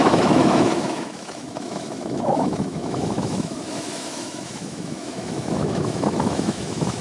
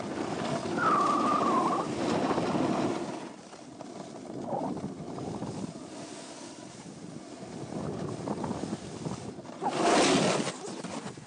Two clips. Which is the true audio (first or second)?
second